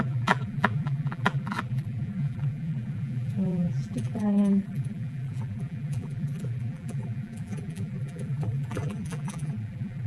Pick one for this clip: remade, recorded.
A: remade